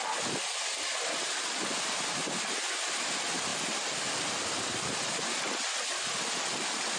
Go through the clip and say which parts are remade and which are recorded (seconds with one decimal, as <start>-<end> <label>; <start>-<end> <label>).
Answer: 0.0-7.0 recorded